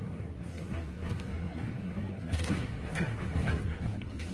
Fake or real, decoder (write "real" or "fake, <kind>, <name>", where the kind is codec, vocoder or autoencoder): fake, codec, SNAC